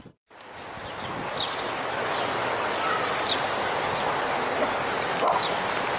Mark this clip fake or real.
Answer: real